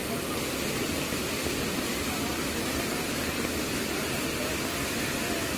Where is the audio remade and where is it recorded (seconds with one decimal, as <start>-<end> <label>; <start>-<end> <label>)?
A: 0.0-5.6 recorded

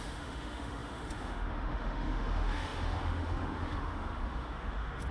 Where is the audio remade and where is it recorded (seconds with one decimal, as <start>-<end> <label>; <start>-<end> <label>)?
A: 0.0-5.1 remade